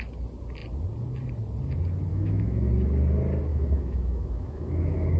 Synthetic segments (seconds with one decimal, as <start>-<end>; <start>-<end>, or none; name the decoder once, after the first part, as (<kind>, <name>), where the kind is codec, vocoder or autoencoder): 2.1-2.7 (autoencoder, DAC-VAE); 3.5-5.2